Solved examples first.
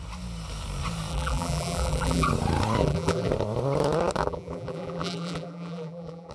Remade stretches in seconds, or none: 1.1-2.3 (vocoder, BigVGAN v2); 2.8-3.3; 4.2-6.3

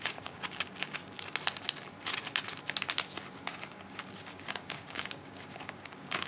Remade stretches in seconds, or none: 0.0-1.0 (codec, DAC); 3.7-6.3

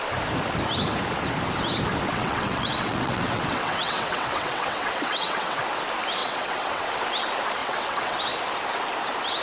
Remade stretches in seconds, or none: 2.1-5.6 (vocoder, WaveNeXt); 6.2-6.8; 7.6-8.2

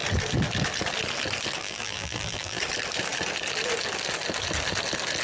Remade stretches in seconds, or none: 1.6-2.6 (vocoder, BigVGAN v2)

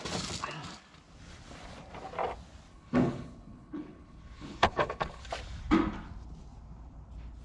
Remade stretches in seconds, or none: 2.7-5.2 (codec, HILCodec)

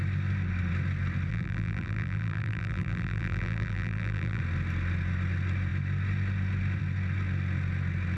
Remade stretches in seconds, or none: 1.3-4.4 (vocoder, BigVGAN v2)

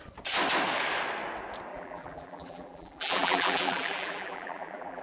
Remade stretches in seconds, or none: 1.7-5.0 (vocoder, BigVGAN v2)